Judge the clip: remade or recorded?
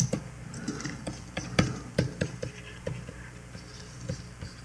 recorded